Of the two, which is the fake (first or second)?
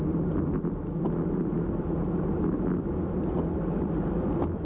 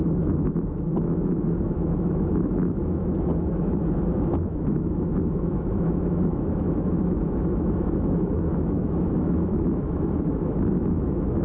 second